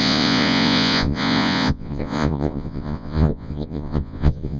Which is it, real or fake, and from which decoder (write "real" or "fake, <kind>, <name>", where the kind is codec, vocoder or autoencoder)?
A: fake, vocoder, Vocos